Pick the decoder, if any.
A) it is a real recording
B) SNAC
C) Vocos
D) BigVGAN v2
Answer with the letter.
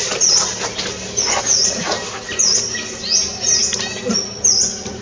A